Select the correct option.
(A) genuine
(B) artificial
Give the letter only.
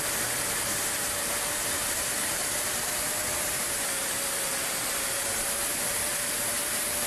B